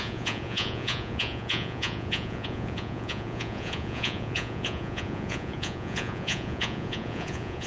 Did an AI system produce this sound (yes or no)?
yes